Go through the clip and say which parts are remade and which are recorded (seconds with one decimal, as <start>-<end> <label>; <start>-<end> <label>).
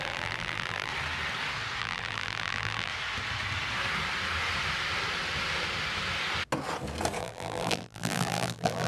0.0-0.9 remade; 0.9-1.8 recorded; 1.8-2.9 remade; 2.9-7.2 recorded; 7.2-8.9 remade